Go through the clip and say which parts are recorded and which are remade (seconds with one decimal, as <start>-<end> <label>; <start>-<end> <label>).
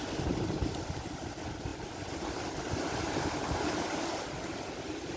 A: 0.0-5.2 recorded